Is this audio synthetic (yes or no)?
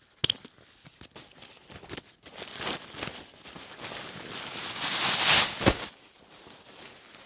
no